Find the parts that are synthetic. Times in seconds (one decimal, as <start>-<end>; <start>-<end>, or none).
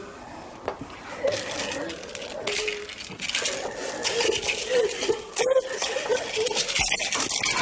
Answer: 0.7-1.6; 4.0-5.4; 6.1-6.6